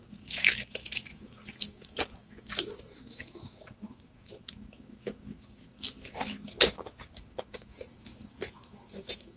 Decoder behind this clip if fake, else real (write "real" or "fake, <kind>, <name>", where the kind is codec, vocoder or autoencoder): fake, autoencoder, DAC-VAE